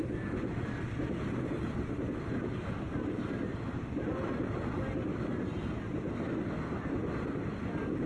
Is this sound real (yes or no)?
yes